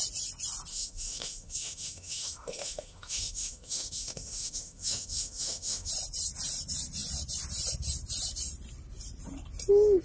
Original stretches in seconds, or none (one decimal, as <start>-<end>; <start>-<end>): 0.0-0.7; 5.9-10.0